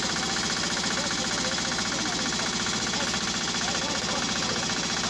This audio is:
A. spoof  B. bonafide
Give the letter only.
B